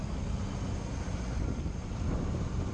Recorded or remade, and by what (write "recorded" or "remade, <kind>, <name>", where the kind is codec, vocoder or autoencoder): recorded